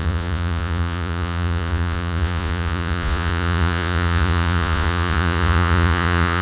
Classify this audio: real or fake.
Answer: fake